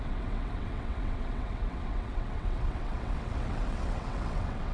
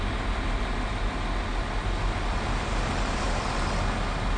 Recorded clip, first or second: second